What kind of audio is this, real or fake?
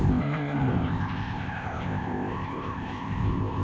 fake